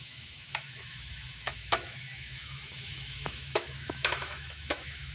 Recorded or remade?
remade